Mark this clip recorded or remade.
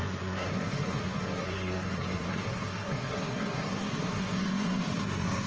remade